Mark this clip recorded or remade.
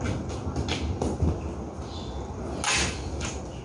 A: recorded